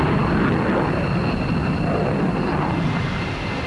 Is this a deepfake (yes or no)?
no